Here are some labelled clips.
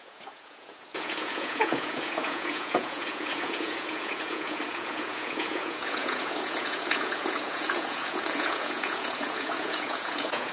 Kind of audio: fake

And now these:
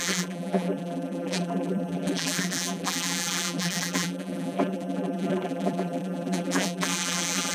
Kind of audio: fake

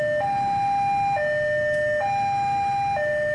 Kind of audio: real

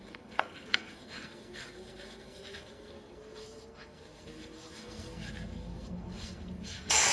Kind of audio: fake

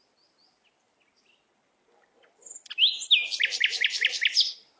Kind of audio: real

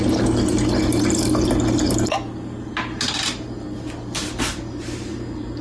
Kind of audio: real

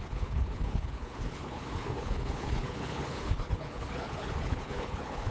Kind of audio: fake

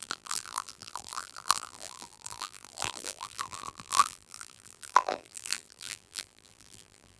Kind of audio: fake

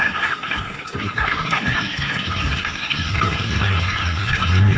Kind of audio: fake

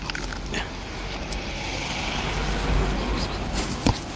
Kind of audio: real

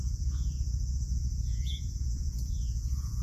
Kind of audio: fake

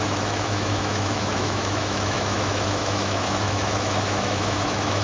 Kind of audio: fake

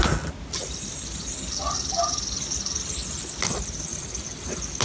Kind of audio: real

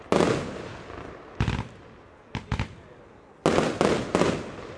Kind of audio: real